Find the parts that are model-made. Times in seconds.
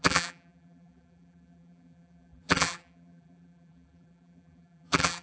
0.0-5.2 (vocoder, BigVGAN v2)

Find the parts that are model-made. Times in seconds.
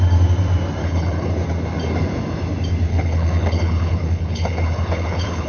0.8-1.3 (codec, HILCodec); 2.9-5.5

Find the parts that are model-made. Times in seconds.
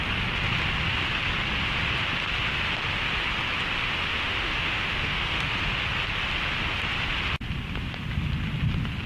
4.1-5.5 (autoencoder, DAC-VAE)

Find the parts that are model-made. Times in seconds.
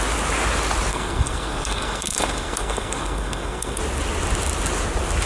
0.9-3.8 (codec, SNAC)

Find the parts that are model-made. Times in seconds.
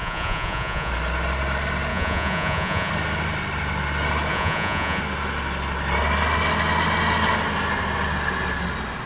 0.0-0.9 (vocoder, Vocos); 1.9-2.9; 4.3-5.0